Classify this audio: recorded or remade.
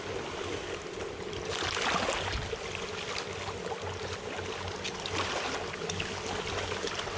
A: recorded